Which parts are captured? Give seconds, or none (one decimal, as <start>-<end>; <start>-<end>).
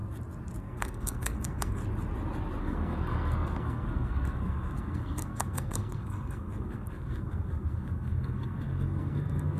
0.0-0.6; 1.8-2.6